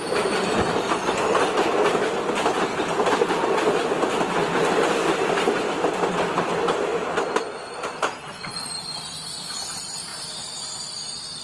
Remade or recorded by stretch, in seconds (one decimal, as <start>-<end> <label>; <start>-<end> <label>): 0.0-11.4 recorded